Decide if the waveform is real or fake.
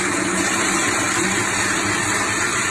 real